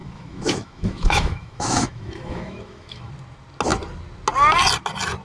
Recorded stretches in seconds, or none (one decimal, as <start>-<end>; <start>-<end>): 3.1-5.2